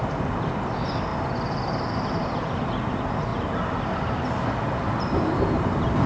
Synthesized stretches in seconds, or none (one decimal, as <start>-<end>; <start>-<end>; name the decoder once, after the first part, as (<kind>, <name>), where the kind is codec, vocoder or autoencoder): none